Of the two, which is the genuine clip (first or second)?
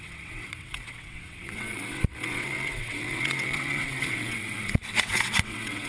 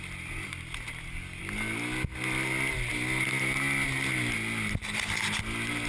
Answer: second